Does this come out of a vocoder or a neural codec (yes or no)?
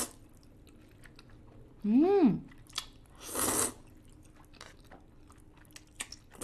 no